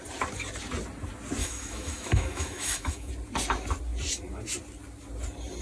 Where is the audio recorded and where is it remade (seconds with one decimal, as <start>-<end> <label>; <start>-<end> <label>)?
0.0-1.4 recorded; 1.4-3.1 remade; 3.1-5.6 recorded